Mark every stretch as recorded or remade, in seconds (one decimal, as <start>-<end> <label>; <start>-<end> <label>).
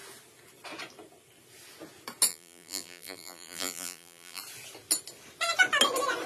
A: 0.0-2.3 recorded; 2.3-4.4 remade; 4.4-6.3 recorded